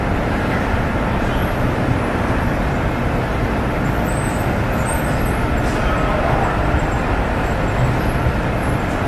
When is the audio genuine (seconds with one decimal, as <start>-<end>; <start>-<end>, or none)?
0.0-1.4; 2.7-9.1